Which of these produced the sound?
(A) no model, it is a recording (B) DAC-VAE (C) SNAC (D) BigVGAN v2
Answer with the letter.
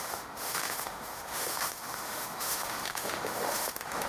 B